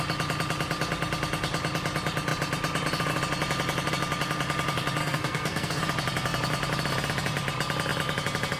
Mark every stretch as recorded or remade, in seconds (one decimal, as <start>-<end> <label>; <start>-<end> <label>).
0.0-5.0 recorded; 5.0-5.8 remade; 5.8-8.6 recorded

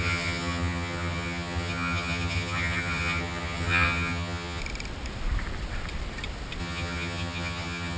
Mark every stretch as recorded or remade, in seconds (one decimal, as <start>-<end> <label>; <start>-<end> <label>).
0.0-4.6 remade; 4.6-6.6 recorded; 6.6-8.0 remade

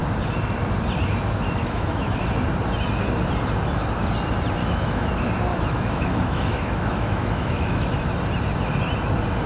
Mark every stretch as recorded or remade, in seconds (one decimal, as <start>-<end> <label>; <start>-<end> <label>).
0.0-1.6 recorded; 1.6-2.2 remade; 2.2-4.6 recorded; 4.6-5.1 remade; 5.1-5.5 recorded; 5.5-8.0 remade; 8.0-9.5 recorded

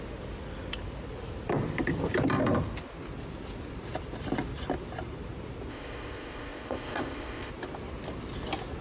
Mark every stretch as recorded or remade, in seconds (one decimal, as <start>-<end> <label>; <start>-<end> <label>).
0.0-5.7 recorded; 5.7-7.5 remade; 7.5-8.8 recorded

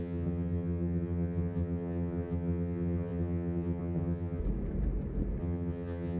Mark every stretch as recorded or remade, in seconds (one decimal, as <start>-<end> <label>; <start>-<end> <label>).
0.0-4.4 remade; 4.4-5.4 recorded; 5.4-6.2 remade

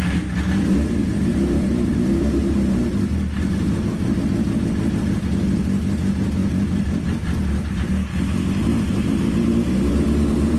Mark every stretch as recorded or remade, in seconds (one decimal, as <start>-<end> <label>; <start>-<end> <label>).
0.0-1.0 recorded; 1.0-4.2 remade; 4.2-6.4 recorded; 6.4-7.9 remade; 7.9-8.7 recorded; 8.7-9.3 remade; 9.3-9.9 recorded; 9.9-10.6 remade

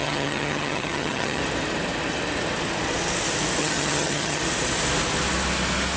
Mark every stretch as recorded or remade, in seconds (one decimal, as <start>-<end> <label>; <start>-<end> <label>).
0.0-1.4 remade; 1.4-3.6 recorded; 3.6-4.4 remade; 4.4-6.0 recorded

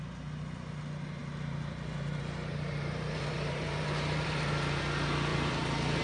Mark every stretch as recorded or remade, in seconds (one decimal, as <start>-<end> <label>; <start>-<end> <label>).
0.0-1.2 recorded; 1.2-4.8 remade; 4.8-5.3 recorded; 5.3-6.0 remade